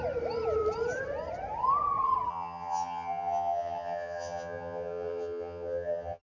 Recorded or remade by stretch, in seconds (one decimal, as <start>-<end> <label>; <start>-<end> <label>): 0.0-2.3 recorded; 2.3-6.2 remade